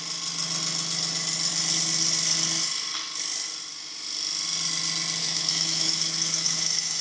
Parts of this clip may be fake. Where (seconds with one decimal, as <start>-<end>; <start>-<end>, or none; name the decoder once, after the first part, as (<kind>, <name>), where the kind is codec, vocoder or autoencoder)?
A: 5.2-7.0 (autoencoder, DAC-VAE)

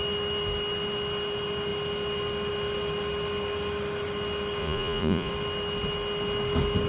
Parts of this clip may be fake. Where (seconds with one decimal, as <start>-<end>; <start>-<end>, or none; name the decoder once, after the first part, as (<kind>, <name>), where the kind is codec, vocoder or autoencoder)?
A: 4.6-5.3 (vocoder, Vocos)

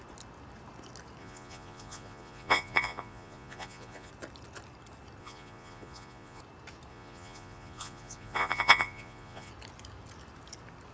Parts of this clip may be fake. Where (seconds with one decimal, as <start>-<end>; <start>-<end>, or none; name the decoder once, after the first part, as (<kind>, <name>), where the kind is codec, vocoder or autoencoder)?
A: 1.2-4.1 (vocoder, Vocos); 5.2-6.4; 6.9-9.5